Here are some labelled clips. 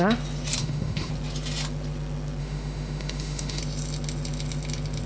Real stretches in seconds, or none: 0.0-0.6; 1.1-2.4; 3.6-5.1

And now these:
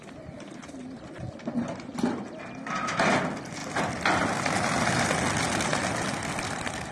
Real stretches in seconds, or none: 0.0-6.9

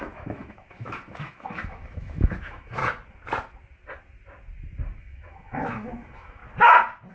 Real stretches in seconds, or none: 2.8-5.0; 6.4-7.1

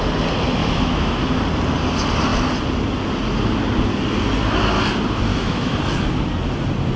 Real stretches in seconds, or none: 0.0-0.6; 1.3-5.3; 5.8-7.0

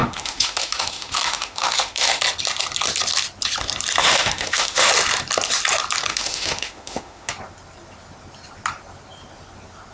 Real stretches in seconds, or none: 2.2-4.0; 4.9-6.1; 7.3-9.9